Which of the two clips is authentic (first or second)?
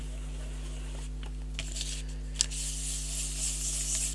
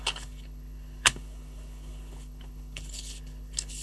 first